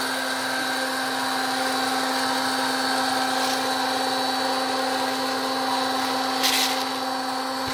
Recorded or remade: recorded